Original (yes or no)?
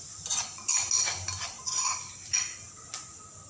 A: yes